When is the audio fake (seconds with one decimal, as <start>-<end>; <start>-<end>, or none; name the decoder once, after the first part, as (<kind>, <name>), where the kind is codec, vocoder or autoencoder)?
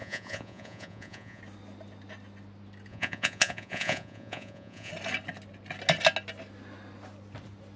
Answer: 0.0-1.4 (vocoder, Vocos); 2.9-4.9